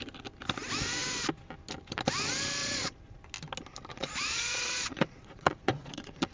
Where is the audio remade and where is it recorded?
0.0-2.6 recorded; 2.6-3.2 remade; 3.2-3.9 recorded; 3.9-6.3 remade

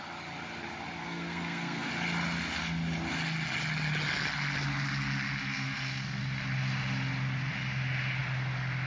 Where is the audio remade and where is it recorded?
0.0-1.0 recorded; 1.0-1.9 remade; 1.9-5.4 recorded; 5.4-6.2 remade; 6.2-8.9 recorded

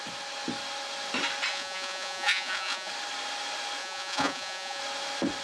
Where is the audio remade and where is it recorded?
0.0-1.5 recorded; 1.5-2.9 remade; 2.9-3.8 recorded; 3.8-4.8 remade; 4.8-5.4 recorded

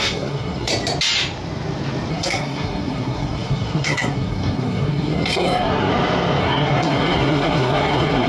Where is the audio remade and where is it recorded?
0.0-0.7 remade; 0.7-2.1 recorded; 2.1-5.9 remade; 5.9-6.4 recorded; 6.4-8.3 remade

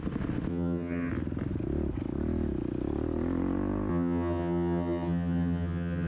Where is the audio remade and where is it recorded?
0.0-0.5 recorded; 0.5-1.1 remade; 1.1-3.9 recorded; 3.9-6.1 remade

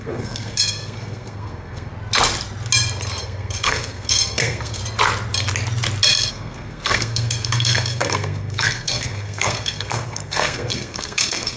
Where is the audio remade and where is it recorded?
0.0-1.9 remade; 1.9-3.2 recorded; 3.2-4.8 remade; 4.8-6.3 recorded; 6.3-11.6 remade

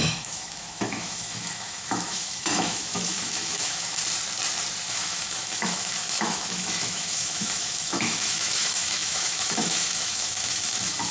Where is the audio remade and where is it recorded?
0.0-4.0 remade; 4.0-4.9 recorded; 4.9-11.1 remade

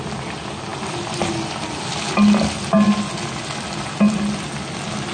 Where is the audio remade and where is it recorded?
0.0-5.1 recorded